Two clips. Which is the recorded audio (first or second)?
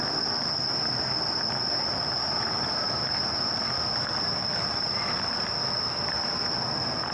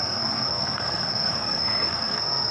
first